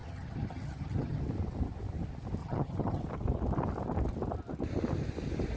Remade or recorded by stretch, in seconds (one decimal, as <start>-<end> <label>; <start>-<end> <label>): 0.0-1.2 remade; 1.2-2.4 recorded; 2.4-3.0 remade; 3.0-5.6 recorded